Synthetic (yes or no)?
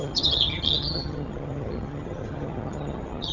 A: yes